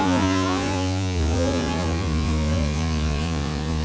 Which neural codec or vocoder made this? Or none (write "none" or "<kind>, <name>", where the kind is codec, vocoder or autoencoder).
vocoder, Vocos